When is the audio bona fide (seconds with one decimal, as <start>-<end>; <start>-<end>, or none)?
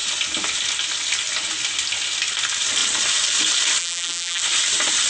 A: 0.0-3.8; 4.4-5.1